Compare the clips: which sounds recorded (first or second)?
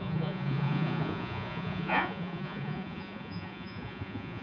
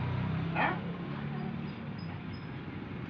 second